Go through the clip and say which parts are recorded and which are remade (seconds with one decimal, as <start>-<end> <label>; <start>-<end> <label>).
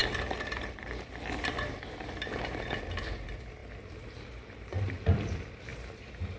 0.0-2.3 remade; 2.3-3.6 recorded; 3.6-5.0 remade; 5.0-5.7 recorded; 5.7-6.4 remade